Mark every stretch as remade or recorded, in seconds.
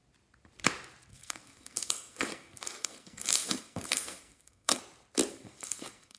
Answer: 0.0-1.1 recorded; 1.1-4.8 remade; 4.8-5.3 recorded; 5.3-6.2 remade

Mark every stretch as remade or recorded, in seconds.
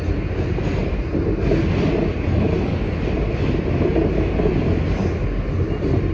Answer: 0.0-6.1 recorded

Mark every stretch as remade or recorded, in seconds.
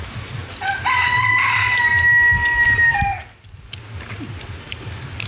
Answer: 0.0-5.3 recorded